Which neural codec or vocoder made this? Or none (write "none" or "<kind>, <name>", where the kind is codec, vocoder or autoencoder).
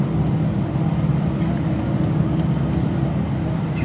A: none